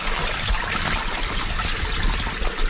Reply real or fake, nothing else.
real